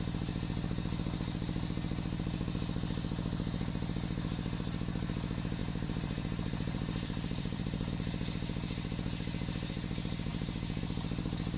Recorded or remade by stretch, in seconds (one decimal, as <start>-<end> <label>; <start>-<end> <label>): 0.0-5.6 recorded; 5.6-7.9 remade; 7.9-10.3 recorded; 10.3-10.8 remade; 10.8-11.6 recorded